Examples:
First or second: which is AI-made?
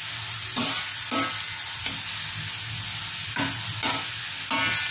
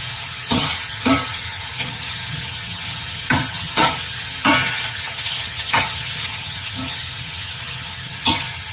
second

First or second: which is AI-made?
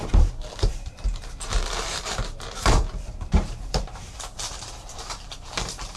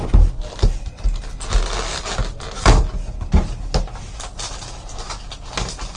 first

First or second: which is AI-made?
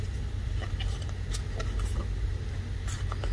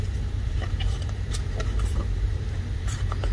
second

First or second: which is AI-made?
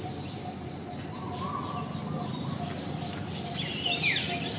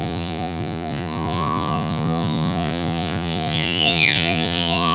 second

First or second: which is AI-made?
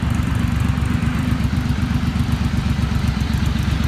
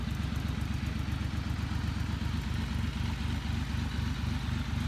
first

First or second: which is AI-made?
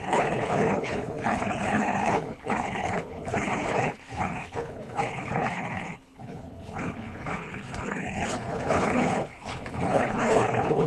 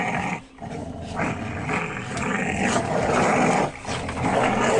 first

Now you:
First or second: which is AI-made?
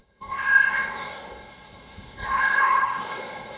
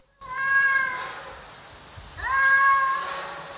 first